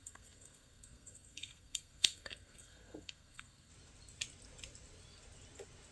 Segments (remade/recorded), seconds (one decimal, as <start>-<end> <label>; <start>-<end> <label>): 0.0-3.7 remade; 3.7-5.9 recorded